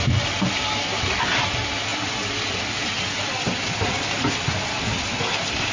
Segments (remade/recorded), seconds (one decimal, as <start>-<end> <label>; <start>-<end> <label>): 0.0-5.7 recorded